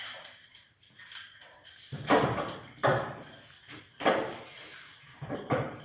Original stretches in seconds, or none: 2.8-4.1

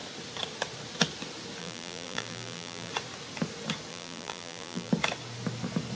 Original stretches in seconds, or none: 0.0-1.6; 2.9-3.9; 4.9-6.0

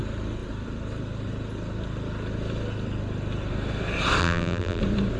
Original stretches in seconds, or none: 0.0-4.2; 4.8-5.2

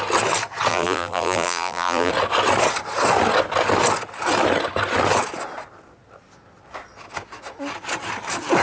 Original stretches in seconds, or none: 0.0-0.7; 2.1-8.6

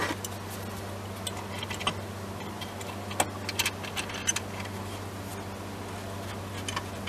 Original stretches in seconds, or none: 0.0-7.1

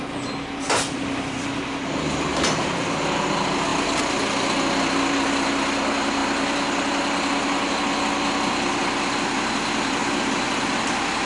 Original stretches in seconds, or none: 0.0-11.3